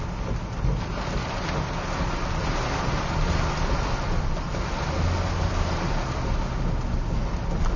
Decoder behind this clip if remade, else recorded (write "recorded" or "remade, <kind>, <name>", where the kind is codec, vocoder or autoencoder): recorded